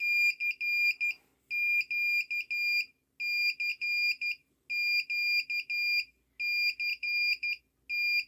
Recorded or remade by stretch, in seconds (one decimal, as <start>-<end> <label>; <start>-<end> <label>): 0.0-3.7 recorded; 3.7-4.5 remade; 4.5-6.9 recorded; 6.9-7.6 remade; 7.6-8.3 recorded